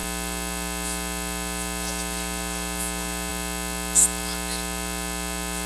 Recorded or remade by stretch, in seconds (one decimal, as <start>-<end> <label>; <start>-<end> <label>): 0.0-5.7 recorded